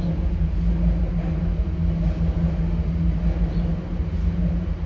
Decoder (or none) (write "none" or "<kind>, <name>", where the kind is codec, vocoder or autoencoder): none